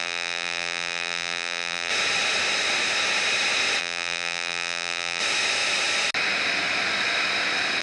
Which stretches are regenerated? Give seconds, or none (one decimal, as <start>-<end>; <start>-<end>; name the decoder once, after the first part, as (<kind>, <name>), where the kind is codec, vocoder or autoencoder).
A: 0.0-1.9 (vocoder, BigVGAN v2); 3.8-5.2